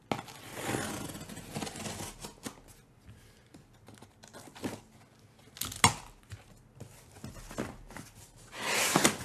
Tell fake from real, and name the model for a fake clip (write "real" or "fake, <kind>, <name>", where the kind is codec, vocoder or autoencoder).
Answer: real